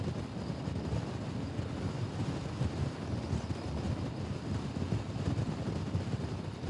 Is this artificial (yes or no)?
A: no